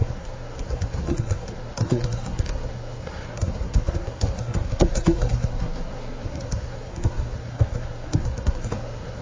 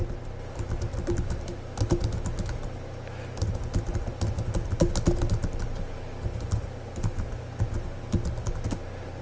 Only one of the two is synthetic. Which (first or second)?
first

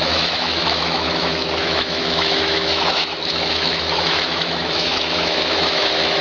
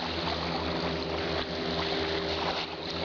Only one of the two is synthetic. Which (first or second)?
first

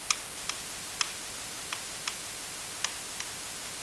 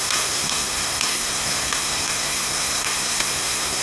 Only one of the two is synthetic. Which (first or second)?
second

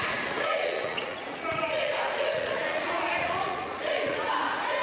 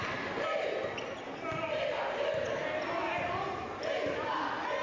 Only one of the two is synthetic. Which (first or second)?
first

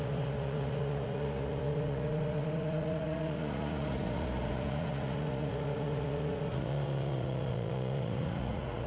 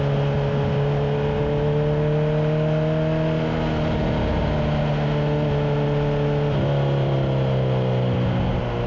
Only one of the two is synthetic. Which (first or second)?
first